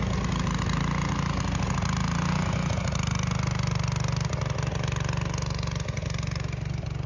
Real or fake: real